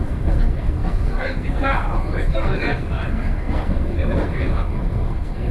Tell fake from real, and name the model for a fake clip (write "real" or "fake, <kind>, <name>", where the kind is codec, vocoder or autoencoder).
fake, codec, SNAC